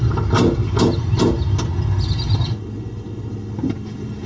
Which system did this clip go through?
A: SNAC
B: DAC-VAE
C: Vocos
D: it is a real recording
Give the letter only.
D